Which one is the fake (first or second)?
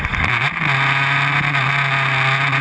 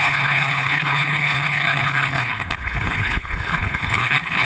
second